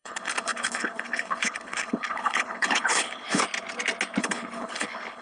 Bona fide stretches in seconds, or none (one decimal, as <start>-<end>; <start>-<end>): 3.4-4.2